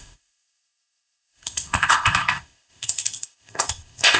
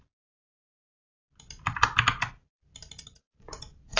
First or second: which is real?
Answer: second